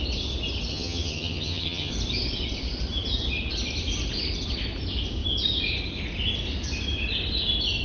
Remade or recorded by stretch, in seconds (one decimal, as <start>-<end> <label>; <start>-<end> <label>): 0.0-0.7 recorded; 0.7-1.9 remade; 1.9-7.8 recorded